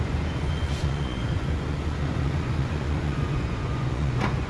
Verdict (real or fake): fake